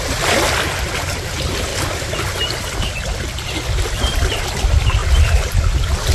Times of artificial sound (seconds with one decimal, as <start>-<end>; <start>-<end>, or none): none

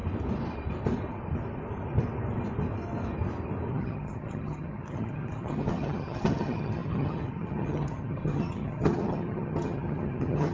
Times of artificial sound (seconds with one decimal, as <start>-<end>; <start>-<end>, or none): 3.7-10.5